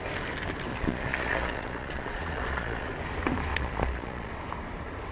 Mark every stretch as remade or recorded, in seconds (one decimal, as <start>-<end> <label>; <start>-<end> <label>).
0.0-0.7 recorded; 0.7-2.9 remade; 2.9-3.5 recorded; 3.5-4.3 remade; 4.3-5.1 recorded